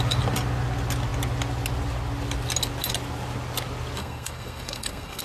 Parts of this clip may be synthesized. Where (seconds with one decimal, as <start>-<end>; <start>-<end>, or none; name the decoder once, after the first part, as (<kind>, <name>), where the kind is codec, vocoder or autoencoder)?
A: 4.0-5.2 (codec, SNAC)